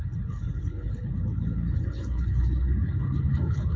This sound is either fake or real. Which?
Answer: fake